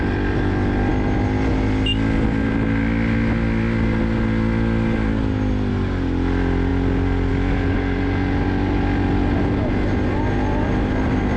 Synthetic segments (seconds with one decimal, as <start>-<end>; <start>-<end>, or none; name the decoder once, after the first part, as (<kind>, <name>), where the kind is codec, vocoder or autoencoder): none